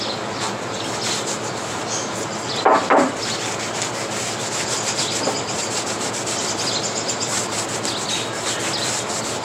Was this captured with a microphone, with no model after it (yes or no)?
yes